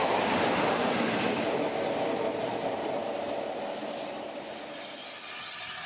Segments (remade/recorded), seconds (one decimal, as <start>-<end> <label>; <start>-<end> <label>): 0.0-5.9 recorded